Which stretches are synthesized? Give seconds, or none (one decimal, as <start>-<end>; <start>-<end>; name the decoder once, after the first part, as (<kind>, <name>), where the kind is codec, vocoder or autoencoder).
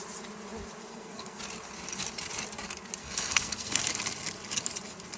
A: 0.9-1.4 (codec, SNAC); 3.0-3.8